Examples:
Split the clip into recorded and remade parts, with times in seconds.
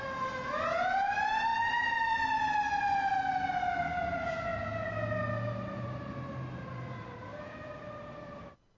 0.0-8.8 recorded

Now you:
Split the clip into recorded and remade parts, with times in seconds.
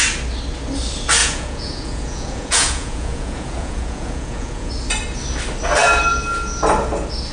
0.0-1.2 recorded; 1.2-4.7 remade; 4.7-7.3 recorded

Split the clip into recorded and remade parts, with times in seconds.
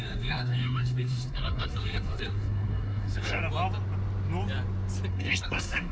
0.0-3.4 remade; 3.4-5.1 recorded; 5.1-5.9 remade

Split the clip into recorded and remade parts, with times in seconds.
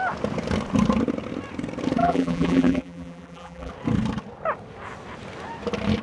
0.0-2.0 recorded; 2.0-3.7 remade; 3.7-6.0 recorded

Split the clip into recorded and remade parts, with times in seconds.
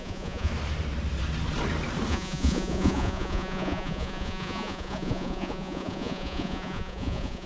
0.0-0.5 remade; 0.5-2.1 recorded; 2.1-7.5 remade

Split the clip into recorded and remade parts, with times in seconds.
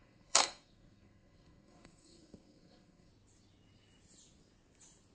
0.0-3.1 remade; 3.1-5.1 recorded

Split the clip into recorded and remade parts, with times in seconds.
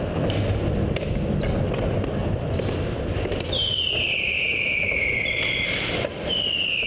0.0-2.2 recorded; 2.2-6.3 remade; 6.3-6.9 recorded